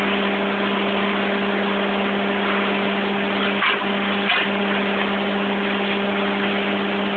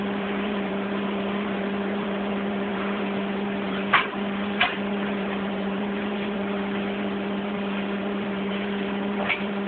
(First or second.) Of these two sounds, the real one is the first